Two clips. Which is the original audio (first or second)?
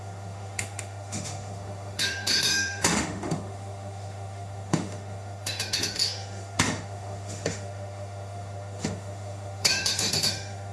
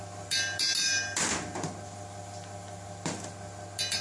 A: second